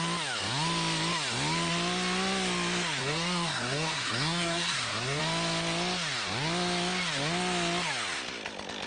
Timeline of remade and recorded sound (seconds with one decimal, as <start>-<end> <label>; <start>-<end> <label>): 0.0-3.0 recorded; 3.0-5.2 remade; 5.2-8.9 recorded